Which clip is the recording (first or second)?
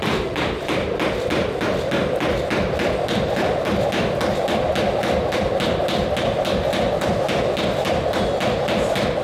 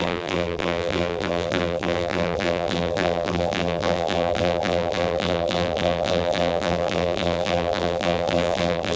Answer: first